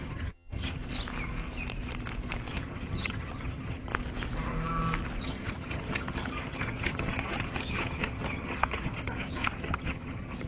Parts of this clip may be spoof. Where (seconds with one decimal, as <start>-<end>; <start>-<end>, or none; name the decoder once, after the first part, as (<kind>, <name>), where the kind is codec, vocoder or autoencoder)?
0.0-0.8 (vocoder, HiFi-GAN); 2.5-3.9; 5.2-10.5